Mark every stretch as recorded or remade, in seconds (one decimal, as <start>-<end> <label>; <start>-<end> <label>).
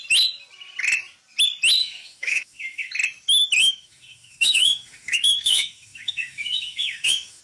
0.0-1.8 recorded; 1.8-2.9 remade; 2.9-3.6 recorded; 3.6-7.4 remade